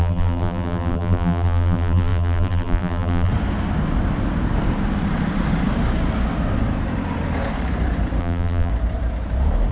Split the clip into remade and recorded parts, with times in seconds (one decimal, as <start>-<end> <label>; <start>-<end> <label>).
0.0-3.3 remade; 3.3-8.2 recorded; 8.2-8.7 remade; 8.7-9.7 recorded